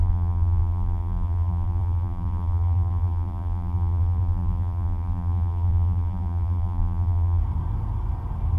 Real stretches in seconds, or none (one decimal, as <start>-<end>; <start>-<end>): 7.4-8.6